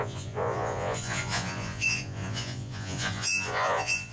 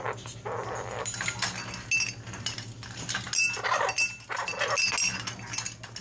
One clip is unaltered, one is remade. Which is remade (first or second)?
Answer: first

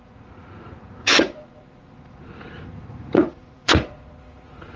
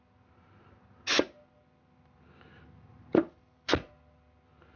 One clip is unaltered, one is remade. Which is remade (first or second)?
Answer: first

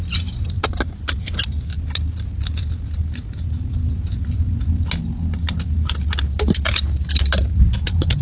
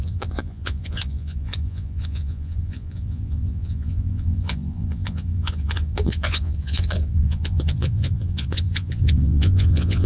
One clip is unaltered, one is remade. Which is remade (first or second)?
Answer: second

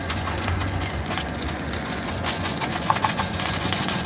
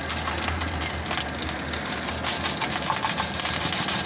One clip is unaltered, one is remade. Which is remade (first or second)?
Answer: first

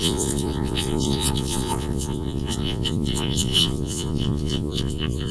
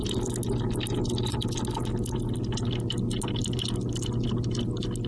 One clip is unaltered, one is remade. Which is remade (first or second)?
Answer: first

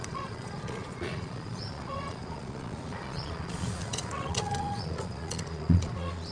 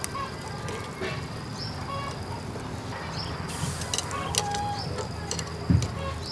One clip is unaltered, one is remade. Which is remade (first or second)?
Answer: first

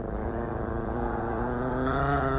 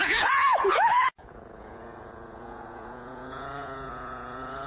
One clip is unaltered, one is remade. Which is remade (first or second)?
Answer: second